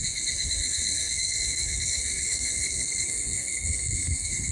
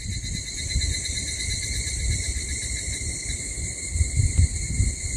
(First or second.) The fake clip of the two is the first